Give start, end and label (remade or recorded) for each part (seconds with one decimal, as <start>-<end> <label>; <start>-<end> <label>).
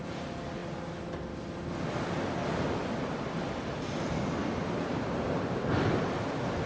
0.0-2.4 remade; 2.4-4.0 recorded; 4.0-6.7 remade